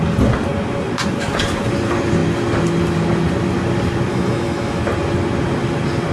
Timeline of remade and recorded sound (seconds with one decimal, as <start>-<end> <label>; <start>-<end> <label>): 0.0-4.1 recorded; 4.1-4.8 remade; 4.8-6.1 recorded